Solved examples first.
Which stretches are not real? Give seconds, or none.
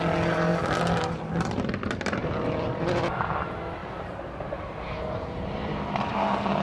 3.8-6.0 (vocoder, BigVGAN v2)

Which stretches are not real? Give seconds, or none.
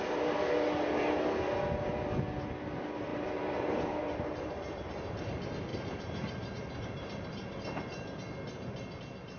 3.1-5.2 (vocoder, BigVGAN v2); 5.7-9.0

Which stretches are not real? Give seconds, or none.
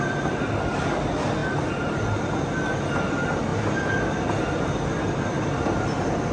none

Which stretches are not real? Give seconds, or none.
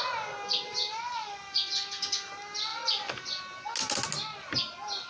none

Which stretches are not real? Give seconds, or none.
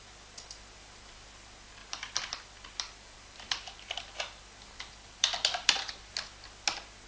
1.8-5.9 (vocoder, BigVGAN v2)